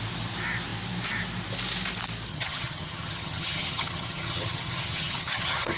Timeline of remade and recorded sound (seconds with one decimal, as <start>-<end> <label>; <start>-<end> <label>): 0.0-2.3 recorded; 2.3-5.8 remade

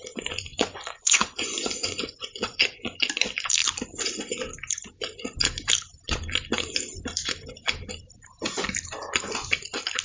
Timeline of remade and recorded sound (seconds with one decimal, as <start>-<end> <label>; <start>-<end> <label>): 0.0-0.5 recorded; 0.5-3.0 remade; 3.0-10.0 recorded

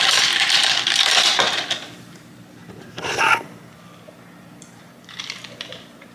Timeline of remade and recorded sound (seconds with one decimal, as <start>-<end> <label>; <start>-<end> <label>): 0.0-2.6 remade; 2.6-5.2 recorded; 5.2-6.1 remade